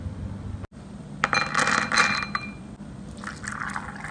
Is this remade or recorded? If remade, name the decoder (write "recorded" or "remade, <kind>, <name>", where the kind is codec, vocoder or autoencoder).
recorded